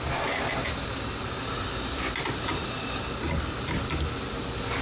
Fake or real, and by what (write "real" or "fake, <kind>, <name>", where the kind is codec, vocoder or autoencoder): real